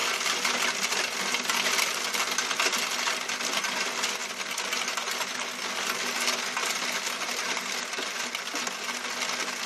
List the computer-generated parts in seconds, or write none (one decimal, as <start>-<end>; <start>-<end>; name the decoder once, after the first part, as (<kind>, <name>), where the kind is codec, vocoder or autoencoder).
none